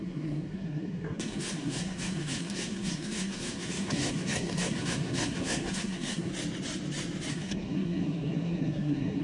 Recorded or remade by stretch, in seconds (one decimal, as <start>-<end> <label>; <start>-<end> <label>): 0.0-6.3 remade; 6.3-7.3 recorded; 7.3-9.2 remade